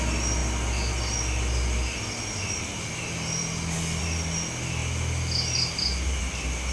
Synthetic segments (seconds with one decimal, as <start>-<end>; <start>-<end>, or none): none